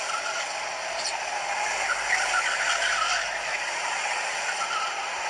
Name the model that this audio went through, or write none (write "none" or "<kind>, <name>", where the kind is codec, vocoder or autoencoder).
vocoder, BigVGAN v2